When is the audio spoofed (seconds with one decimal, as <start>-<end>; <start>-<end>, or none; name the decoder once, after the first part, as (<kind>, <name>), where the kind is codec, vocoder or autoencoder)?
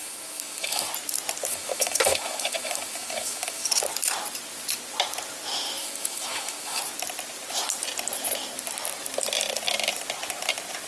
0.0-0.9 (autoencoder, DAC-VAE); 1.5-3.7; 5.8-6.8